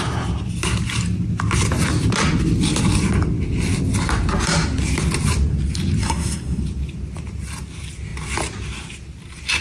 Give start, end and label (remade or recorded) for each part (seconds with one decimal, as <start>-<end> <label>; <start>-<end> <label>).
0.0-6.0 recorded; 6.0-6.6 remade; 6.6-9.6 recorded